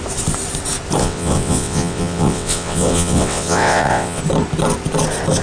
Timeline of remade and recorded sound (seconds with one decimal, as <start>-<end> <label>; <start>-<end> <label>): 0.0-1.0 recorded; 1.0-4.2 remade; 4.2-5.4 recorded